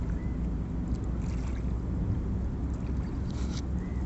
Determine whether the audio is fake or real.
real